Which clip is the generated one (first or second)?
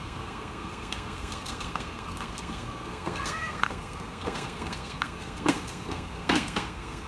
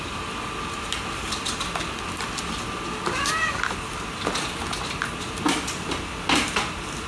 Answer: first